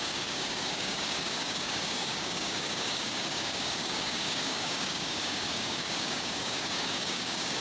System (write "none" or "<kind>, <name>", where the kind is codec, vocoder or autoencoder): codec, DAC